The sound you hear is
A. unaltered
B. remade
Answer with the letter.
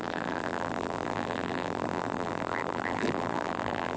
B